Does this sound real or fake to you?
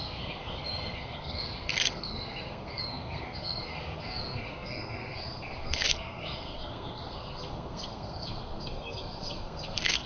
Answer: fake